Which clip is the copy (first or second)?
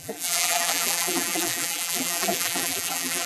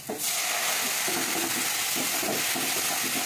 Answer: first